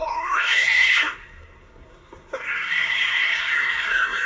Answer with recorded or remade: remade